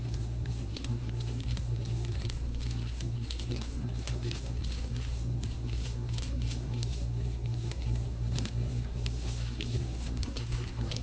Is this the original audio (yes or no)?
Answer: no